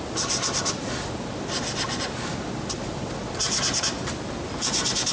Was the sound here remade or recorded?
recorded